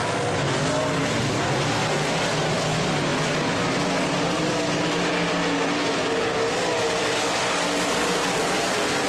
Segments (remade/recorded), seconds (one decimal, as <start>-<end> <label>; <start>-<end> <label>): 0.0-9.1 recorded